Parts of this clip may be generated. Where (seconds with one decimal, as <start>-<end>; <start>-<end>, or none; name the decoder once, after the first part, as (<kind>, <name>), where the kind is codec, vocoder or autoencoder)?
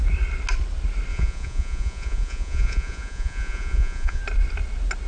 1.1-4.2 (vocoder, Vocos)